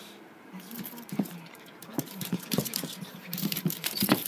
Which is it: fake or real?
fake